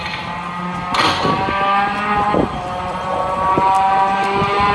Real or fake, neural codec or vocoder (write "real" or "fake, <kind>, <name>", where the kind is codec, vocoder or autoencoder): real